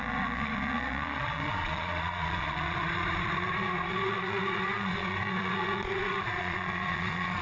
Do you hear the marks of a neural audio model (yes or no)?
yes